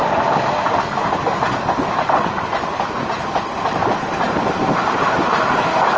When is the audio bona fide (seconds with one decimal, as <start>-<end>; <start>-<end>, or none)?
0.0-2.7; 5.6-6.0